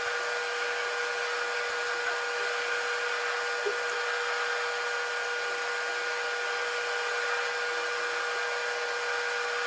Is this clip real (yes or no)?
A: yes